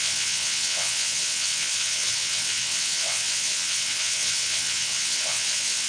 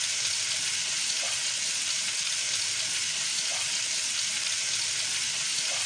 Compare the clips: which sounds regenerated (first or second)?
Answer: first